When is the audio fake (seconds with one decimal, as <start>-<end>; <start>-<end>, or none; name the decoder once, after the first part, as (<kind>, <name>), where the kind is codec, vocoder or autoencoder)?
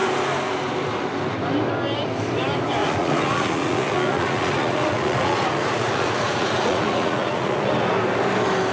2.8-7.7 (vocoder, Vocos)